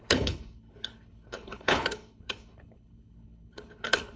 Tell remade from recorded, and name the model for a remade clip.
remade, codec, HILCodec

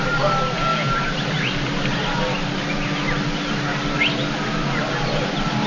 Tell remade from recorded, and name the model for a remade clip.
recorded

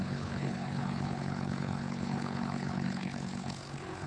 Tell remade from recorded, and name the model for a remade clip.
remade, codec, HILCodec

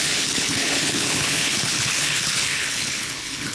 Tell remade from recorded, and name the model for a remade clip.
remade, codec, HILCodec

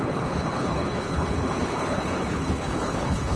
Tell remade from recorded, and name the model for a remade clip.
remade, codec, HILCodec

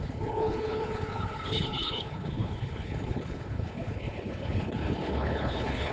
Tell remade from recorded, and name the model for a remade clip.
remade, codec, HILCodec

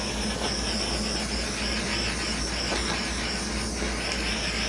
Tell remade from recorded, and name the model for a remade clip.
recorded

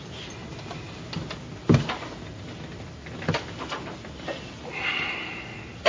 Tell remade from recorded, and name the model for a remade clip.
recorded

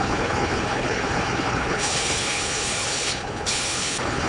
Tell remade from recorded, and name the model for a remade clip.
remade, codec, HILCodec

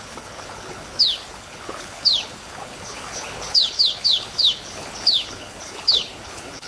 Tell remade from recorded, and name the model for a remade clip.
remade, codec, HILCodec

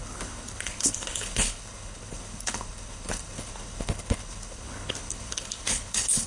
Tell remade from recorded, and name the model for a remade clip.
remade, codec, HILCodec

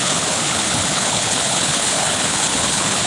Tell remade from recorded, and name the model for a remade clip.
remade, codec, HILCodec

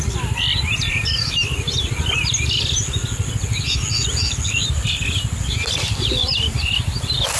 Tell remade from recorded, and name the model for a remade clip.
recorded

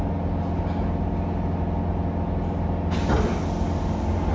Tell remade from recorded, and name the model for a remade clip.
recorded